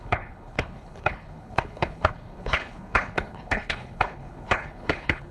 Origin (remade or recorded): remade